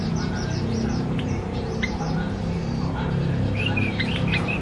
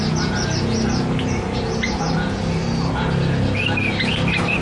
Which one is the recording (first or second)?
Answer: second